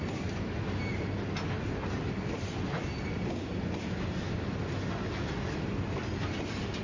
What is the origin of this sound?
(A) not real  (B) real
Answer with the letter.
B